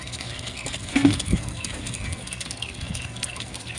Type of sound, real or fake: fake